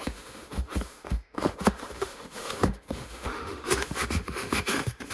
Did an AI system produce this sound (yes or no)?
yes